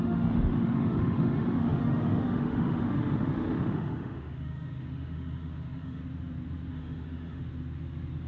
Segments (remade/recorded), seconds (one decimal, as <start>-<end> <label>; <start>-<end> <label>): 0.0-6.0 remade; 6.0-6.7 recorded; 6.7-7.4 remade; 7.4-8.3 recorded